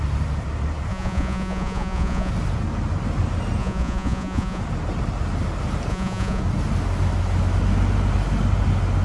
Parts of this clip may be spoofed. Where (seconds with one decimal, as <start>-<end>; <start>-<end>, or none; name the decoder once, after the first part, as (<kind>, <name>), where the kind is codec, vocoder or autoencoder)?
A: 0.9-2.3 (vocoder, Vocos); 3.6-4.6; 5.9-6.4